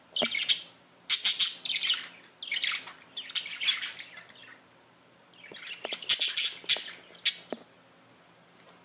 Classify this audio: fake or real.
real